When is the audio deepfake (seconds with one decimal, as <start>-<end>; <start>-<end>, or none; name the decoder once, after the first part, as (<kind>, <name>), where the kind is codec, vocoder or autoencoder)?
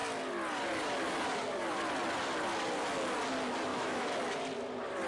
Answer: 3.7-4.2 (autoencoder, DAC-VAE)